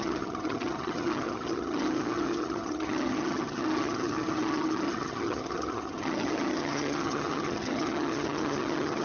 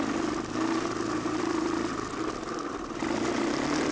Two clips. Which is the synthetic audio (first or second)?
first